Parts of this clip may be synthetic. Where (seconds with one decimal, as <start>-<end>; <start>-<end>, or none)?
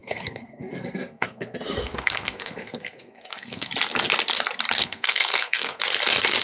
0.0-3.7; 4.8-5.8